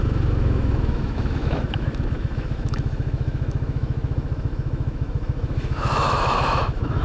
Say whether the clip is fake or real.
fake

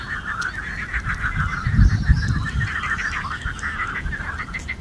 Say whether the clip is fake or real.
real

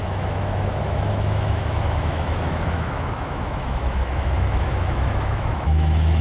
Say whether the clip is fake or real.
fake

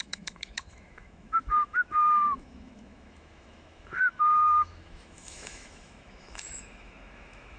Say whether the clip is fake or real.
fake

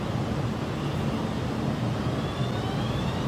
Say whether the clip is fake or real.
real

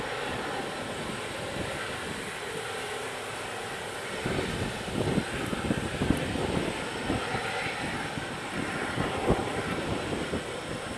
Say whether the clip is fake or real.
real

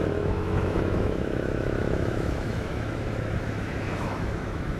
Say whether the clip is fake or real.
fake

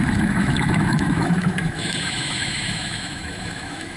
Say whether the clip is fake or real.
fake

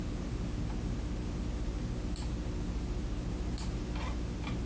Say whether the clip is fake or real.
real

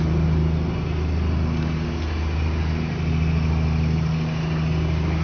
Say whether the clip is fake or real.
real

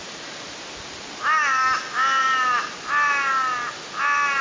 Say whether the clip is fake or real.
real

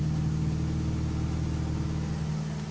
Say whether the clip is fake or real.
real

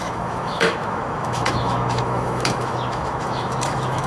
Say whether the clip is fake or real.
fake